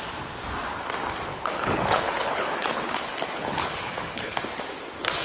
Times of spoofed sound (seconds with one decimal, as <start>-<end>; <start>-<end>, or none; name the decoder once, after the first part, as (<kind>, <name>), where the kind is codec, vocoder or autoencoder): 1.3-4.4 (codec, HILCodec)